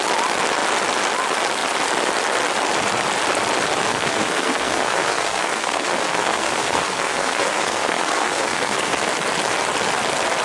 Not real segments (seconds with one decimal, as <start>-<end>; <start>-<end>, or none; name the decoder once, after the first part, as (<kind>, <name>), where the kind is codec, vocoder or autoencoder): 3.9-9.0 (codec, SNAC)